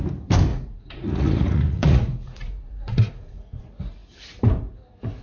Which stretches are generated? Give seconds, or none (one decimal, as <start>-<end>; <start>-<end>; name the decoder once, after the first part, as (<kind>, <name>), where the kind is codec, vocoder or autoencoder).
0.5-3.6 (vocoder, Vocos)